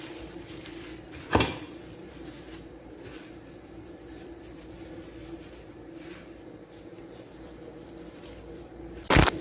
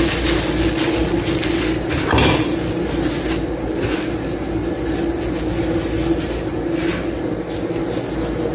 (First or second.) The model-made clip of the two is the first